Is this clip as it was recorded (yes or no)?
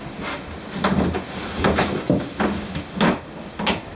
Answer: yes